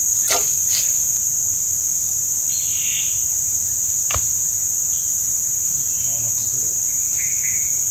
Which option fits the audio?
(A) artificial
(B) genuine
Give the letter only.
B